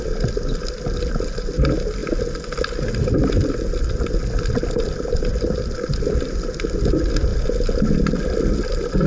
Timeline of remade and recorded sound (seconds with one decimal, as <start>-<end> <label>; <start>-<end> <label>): 0.0-9.1 recorded